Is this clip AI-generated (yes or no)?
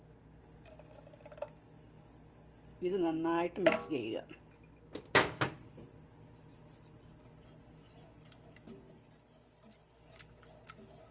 no